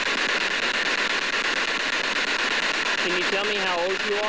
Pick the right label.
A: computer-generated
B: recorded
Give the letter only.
B